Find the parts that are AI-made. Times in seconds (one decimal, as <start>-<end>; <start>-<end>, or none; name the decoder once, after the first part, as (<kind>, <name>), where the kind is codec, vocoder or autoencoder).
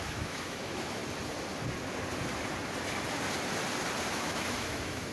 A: 0.0-1.0 (autoencoder, DAC-VAE); 4.1-5.1